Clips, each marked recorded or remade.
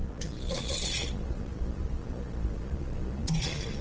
remade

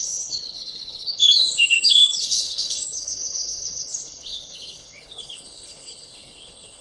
remade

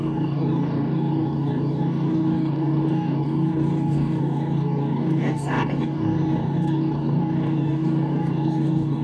remade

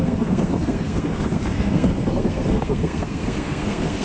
remade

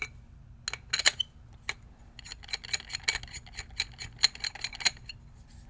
recorded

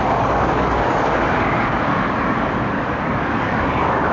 remade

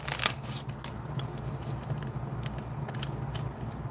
recorded